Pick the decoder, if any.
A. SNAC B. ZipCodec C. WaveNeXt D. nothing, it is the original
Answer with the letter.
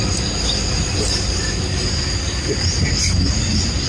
D